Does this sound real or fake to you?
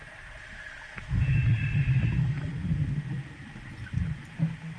real